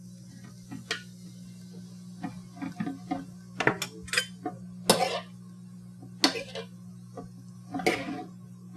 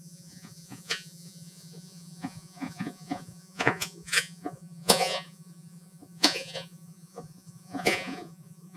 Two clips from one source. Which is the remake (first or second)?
second